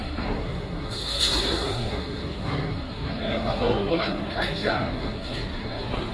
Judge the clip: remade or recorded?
remade